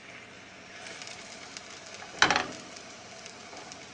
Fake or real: real